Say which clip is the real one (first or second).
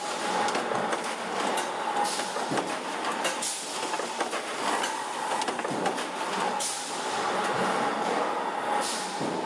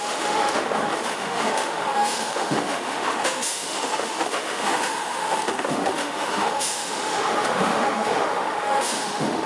first